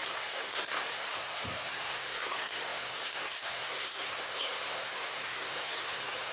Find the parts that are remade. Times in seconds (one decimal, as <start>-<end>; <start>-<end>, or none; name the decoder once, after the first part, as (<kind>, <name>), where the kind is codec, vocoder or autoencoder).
0.0-6.3 (codec, SNAC)